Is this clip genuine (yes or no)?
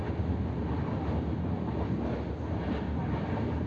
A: yes